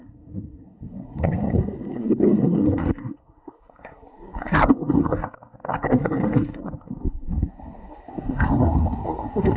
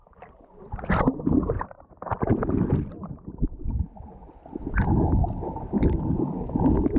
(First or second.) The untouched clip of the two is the second